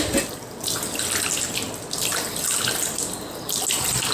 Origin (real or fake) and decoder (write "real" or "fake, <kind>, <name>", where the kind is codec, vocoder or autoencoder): real